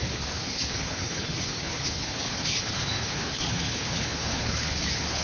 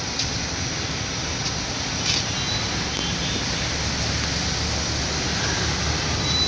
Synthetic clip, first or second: first